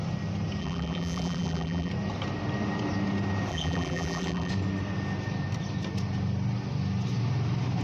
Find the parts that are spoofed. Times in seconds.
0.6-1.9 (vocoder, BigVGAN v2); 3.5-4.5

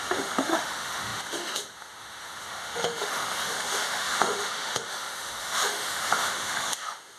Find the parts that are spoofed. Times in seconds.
0.0-7.2 (autoencoder, DAC-VAE)

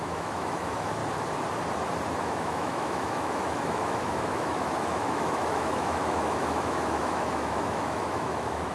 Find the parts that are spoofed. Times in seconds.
0.0-1.0 (autoencoder, DAC-VAE); 2.2-8.7

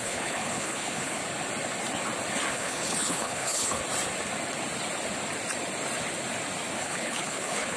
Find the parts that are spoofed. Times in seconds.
0.0-1.2 (codec, HILCodec); 2.5-3.8; 6.8-7.8